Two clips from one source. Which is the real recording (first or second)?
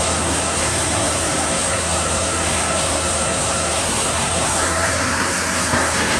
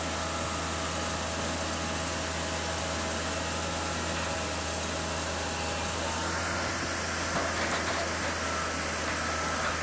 second